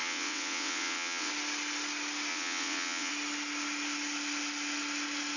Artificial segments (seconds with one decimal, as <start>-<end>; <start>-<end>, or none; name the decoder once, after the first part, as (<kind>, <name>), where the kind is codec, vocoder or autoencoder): 0.0-1.3 (vocoder, WaveNeXt); 2.3-3.1